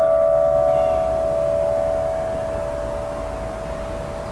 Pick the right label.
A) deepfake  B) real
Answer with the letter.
B